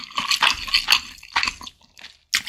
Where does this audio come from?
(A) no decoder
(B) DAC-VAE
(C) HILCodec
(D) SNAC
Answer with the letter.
A